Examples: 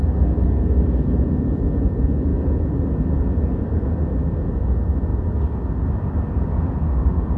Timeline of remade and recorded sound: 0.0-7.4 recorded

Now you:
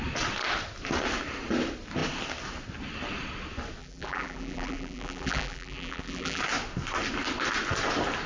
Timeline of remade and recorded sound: 0.0-3.8 recorded; 3.8-6.4 remade; 6.4-8.3 recorded

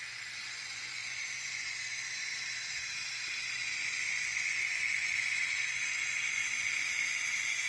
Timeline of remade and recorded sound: 0.0-2.3 remade; 2.3-3.4 recorded; 3.4-7.7 remade

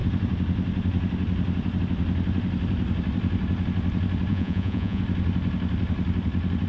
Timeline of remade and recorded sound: 0.0-4.3 recorded; 4.3-5.0 remade; 5.0-6.7 recorded